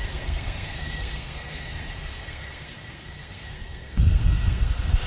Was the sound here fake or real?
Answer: fake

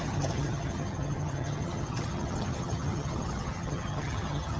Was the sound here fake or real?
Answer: fake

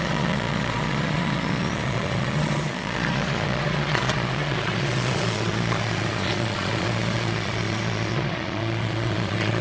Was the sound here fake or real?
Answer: fake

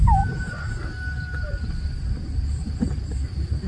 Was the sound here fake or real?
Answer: real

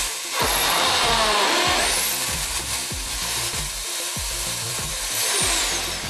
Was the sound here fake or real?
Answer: fake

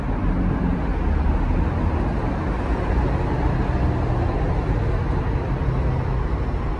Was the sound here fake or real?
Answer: real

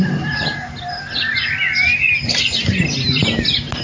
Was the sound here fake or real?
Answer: real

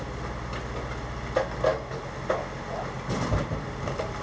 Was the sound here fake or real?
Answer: real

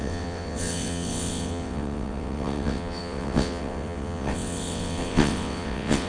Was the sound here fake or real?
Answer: fake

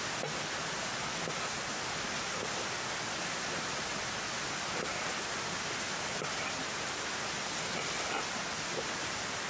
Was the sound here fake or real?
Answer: real